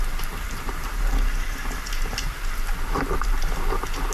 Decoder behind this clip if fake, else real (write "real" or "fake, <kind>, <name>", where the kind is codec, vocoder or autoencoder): fake, vocoder, BigVGAN v2